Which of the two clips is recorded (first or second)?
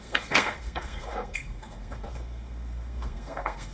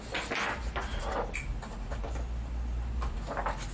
second